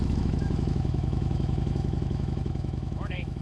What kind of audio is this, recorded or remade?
remade